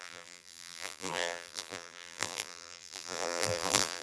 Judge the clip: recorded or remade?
remade